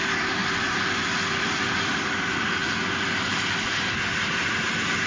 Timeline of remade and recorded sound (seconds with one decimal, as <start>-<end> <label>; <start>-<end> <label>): 0.0-0.4 remade; 0.4-1.4 recorded; 1.4-2.6 remade; 2.6-5.1 recorded